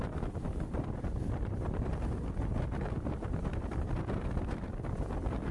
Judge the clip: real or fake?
real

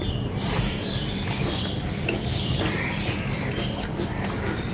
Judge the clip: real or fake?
fake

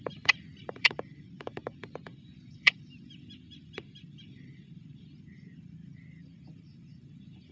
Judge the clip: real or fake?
fake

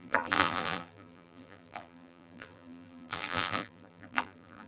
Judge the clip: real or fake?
fake